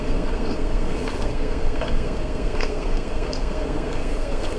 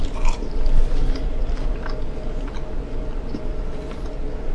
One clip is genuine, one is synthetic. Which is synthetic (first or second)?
first